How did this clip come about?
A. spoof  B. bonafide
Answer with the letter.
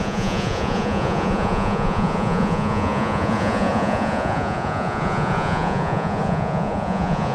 A